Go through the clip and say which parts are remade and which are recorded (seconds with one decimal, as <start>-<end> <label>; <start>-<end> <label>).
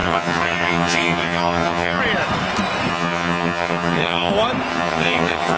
0.0-2.0 remade; 2.0-2.9 recorded; 2.9-4.3 remade; 4.3-4.7 recorded; 4.7-5.6 remade